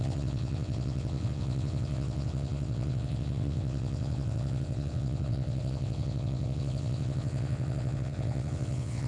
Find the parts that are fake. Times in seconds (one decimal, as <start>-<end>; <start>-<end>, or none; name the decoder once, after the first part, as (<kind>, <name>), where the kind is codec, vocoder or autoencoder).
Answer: 0.0-9.1 (vocoder, WaveNeXt)